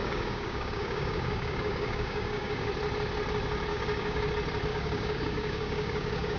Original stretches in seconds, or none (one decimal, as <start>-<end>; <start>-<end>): 2.7-3.7; 4.3-4.7